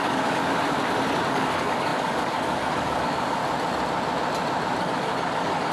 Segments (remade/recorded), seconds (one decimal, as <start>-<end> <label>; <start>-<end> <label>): 0.0-0.4 remade; 0.4-1.3 recorded; 1.3-3.4 remade; 3.4-4.8 recorded; 4.8-5.7 remade